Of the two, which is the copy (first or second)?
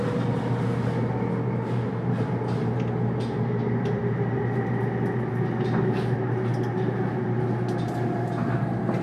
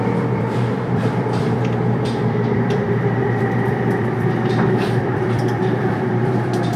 second